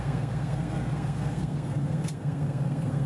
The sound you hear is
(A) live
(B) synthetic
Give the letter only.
B